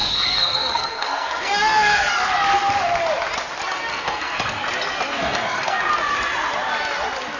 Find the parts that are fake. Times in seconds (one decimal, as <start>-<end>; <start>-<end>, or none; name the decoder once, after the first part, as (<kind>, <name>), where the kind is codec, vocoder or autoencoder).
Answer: 0.0-2.1 (codec, SNAC); 3.9-4.6; 5.1-5.9